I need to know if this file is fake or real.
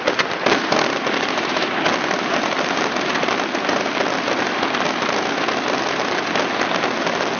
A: real